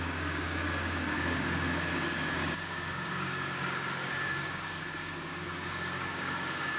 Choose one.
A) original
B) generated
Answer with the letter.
B